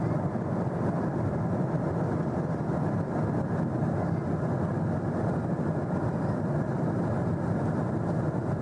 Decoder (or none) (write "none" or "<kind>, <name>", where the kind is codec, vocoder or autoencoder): vocoder, BigVGAN v2